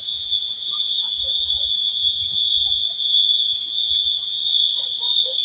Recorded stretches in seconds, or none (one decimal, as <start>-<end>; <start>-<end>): 4.4-5.4